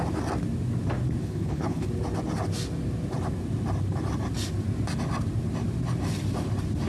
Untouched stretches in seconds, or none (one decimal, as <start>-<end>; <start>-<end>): 0.0-1.2; 1.9-6.9